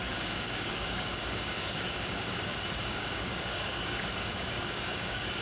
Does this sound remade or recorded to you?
remade